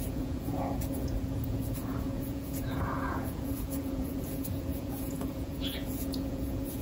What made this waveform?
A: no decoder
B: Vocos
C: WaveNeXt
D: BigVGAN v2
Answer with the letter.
B